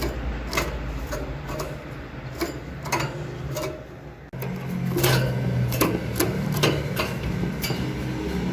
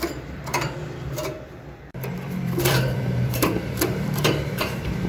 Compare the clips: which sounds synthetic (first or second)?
second